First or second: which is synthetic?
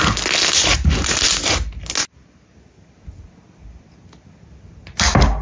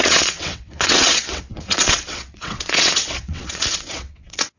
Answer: second